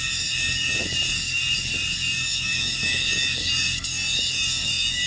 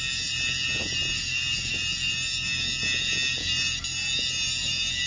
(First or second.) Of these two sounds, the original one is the second